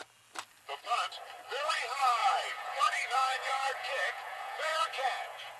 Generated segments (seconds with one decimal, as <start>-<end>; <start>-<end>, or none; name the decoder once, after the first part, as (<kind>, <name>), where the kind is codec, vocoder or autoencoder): 2.2-5.6 (vocoder, Vocos)